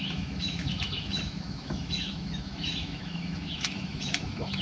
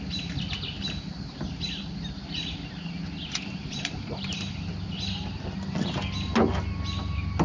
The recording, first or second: second